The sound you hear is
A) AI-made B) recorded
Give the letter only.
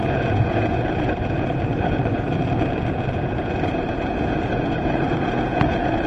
A